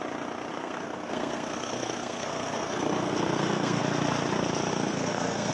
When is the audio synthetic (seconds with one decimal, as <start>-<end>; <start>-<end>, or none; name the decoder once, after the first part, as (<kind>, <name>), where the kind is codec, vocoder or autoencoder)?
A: 0.5-3.8 (codec, SNAC); 4.7-5.5